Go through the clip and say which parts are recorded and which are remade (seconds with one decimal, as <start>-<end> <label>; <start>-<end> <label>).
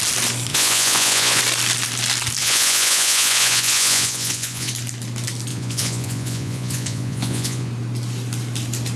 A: 0.0-0.5 recorded; 0.5-1.4 remade; 1.4-2.4 recorded; 2.4-4.7 remade; 4.7-5.5 recorded; 5.5-7.7 remade; 7.7-9.0 recorded